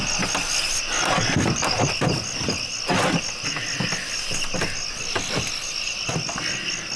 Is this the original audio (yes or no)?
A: yes